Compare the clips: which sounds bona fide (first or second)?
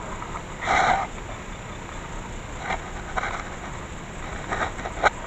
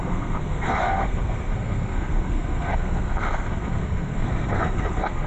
first